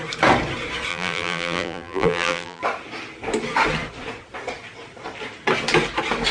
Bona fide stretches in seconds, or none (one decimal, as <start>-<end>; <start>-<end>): 0.0-0.9; 2.6-6.3